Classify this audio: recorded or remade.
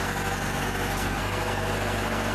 remade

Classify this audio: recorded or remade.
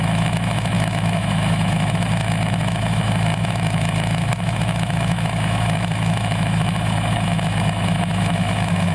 remade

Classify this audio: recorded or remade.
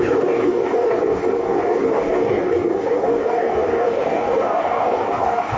remade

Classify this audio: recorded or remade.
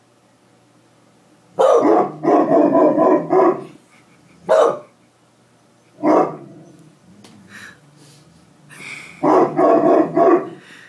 recorded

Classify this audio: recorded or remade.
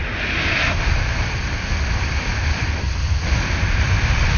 recorded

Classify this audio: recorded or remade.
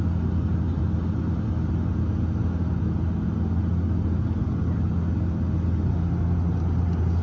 recorded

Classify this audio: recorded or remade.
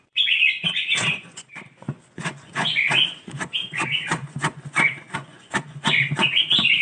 remade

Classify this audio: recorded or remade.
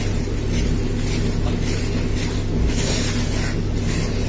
recorded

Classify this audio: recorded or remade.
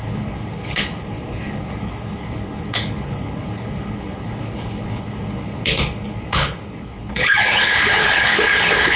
remade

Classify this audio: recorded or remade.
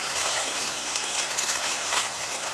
remade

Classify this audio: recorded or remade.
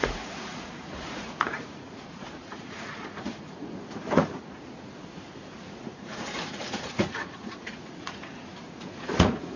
remade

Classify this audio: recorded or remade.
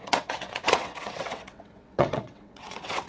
remade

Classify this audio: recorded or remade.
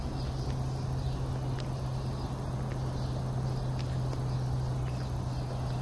recorded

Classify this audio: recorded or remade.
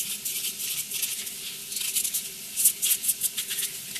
recorded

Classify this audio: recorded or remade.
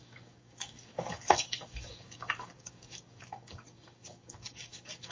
remade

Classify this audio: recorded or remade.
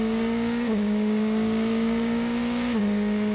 remade